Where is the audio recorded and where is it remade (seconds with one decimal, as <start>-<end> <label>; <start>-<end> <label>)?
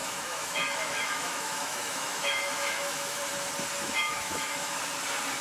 0.0-3.2 remade; 3.2-3.8 recorded; 3.8-4.8 remade; 4.8-5.4 recorded